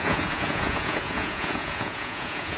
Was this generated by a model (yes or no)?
yes